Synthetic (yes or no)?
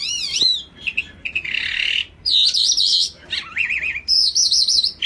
yes